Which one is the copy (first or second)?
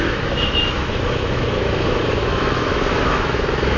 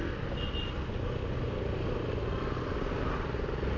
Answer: first